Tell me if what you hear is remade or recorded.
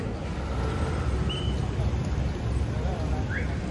recorded